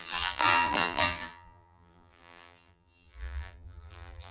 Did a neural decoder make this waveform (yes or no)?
yes